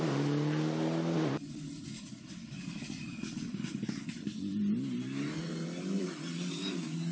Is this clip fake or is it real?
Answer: real